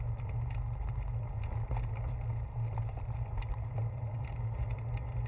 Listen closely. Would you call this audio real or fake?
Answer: real